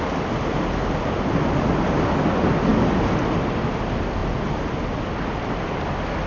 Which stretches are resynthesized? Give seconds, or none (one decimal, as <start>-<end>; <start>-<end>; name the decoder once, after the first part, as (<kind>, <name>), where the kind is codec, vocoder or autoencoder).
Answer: none